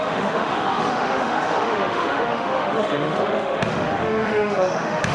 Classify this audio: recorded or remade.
remade